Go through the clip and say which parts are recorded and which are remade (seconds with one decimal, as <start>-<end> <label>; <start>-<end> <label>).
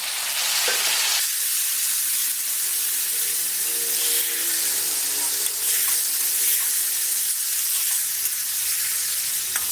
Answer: 0.0-9.7 recorded